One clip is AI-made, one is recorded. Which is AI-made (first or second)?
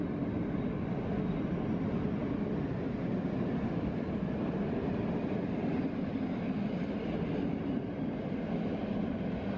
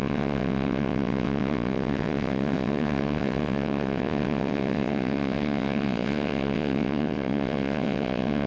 second